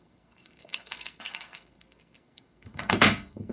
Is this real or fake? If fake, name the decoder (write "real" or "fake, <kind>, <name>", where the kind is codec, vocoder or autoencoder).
fake, codec, SNAC